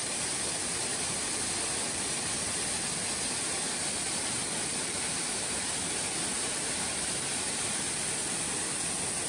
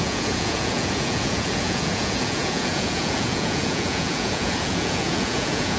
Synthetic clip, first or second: second